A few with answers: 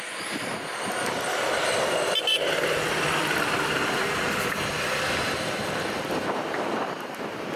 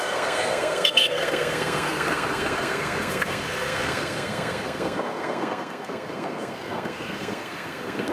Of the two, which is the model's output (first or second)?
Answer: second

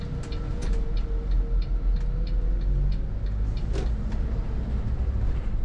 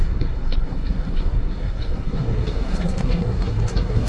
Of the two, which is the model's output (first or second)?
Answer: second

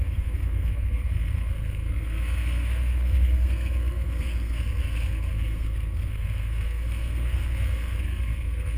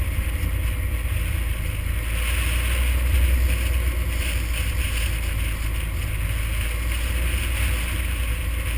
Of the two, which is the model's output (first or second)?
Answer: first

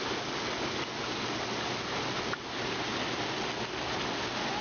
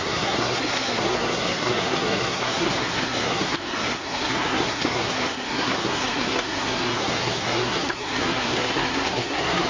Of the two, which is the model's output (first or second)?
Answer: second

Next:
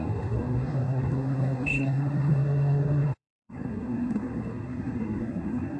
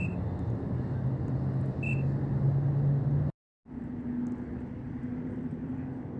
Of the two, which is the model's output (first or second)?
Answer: first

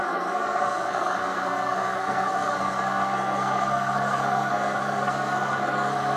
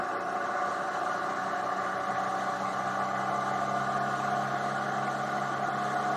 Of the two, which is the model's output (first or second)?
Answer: first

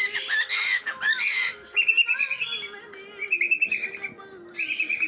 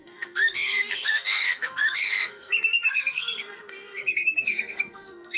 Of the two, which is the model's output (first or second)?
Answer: second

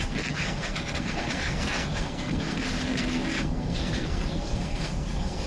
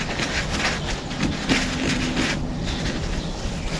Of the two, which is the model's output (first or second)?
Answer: first